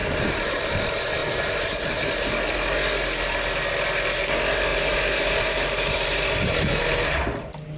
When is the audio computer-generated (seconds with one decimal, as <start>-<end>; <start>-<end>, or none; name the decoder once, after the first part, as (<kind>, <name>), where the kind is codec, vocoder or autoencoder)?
0.0-0.5 (vocoder, BigVGAN v2); 1.2-2.1; 4.7-7.2